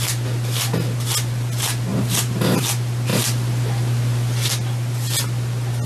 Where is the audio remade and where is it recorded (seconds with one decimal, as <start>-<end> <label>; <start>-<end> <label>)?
0.0-1.9 recorded; 1.9-2.6 remade; 2.6-5.9 recorded